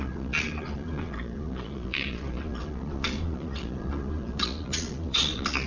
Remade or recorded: remade